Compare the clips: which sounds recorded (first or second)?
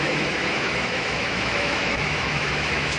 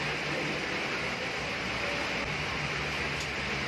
second